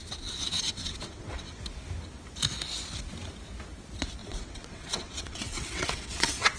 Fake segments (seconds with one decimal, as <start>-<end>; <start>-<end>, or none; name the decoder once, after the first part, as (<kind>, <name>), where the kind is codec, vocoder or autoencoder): 0.0-1.6 (vocoder, WaveNeXt); 4.2-6.6